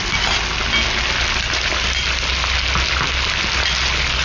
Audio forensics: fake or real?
real